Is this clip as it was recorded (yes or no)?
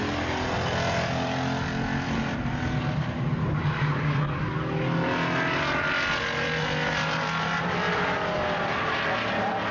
yes